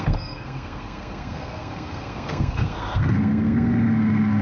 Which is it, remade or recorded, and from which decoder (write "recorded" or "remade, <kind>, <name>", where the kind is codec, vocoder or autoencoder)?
remade, codec, SNAC